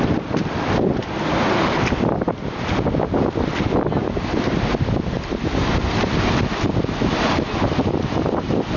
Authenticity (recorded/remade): recorded